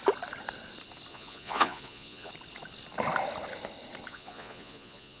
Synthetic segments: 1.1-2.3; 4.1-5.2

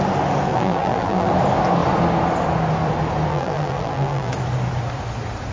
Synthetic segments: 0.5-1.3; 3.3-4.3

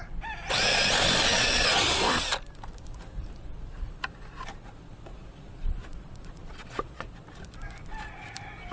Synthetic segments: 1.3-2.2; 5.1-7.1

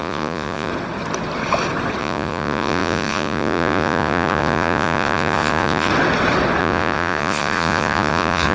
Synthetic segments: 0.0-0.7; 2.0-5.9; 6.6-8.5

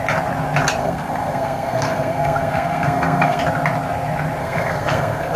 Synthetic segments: 0.8-3.4; 4.4-5.4

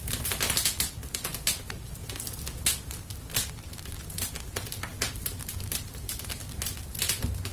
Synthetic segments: none

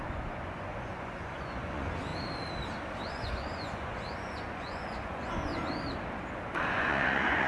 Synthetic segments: 0.0-2.1; 3.1-5.5; 6.3-7.5